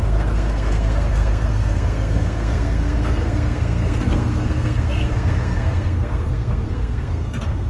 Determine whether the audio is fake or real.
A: fake